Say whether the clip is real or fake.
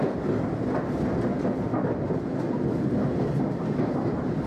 real